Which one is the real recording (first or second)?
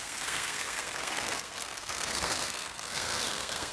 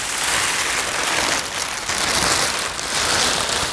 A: second